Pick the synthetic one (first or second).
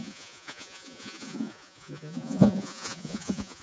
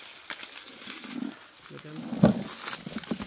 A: first